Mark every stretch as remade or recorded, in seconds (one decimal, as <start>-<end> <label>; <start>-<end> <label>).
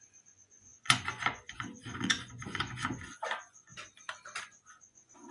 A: 0.0-3.7 remade; 3.7-4.4 recorded; 4.4-5.3 remade